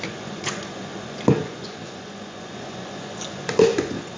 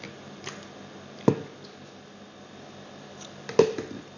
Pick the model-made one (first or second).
first